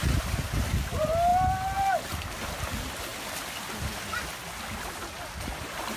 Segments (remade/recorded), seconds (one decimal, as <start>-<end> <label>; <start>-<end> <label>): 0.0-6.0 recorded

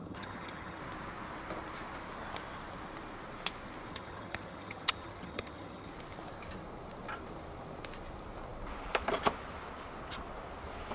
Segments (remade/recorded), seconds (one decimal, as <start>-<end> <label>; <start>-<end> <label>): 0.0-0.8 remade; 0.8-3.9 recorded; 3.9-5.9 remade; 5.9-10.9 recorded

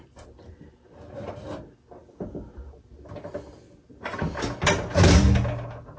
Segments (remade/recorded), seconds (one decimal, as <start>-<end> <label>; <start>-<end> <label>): 0.0-6.0 recorded